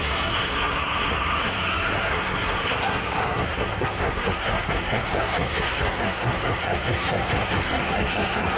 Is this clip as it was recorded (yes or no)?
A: no